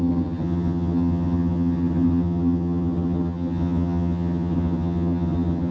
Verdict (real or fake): fake